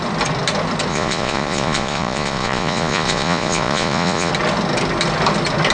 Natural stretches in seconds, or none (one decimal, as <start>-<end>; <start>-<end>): 0.0-0.9; 4.3-5.7